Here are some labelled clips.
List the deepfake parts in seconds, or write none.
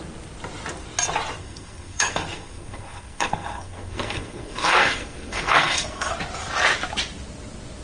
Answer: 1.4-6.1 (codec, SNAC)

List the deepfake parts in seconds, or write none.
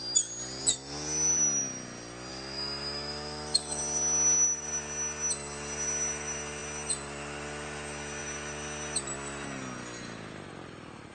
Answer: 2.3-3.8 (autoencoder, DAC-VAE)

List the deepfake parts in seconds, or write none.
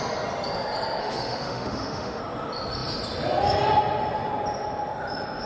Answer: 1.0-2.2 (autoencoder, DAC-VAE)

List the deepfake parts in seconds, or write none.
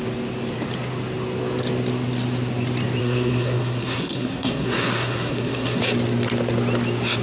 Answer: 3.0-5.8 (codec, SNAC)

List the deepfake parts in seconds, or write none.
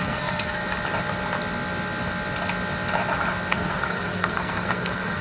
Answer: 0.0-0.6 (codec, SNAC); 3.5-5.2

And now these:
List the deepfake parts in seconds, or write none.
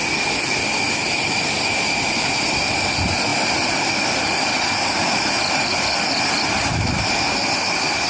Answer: none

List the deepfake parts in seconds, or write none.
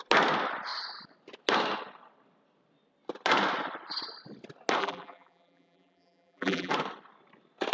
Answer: 4.8-6.7 (vocoder, BigVGAN v2)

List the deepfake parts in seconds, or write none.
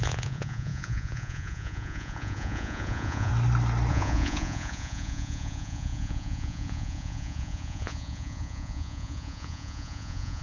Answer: 0.0-3.3 (vocoder, Vocos); 3.9-10.4